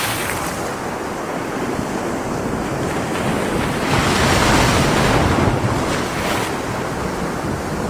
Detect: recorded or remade recorded